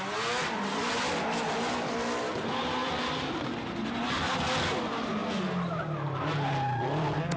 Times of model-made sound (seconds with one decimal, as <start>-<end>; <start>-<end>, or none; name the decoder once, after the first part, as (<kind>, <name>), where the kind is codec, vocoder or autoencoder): none

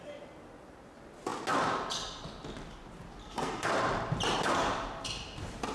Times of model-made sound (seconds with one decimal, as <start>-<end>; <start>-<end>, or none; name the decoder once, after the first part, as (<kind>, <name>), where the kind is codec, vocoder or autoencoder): 3.2-3.7 (codec, SNAC)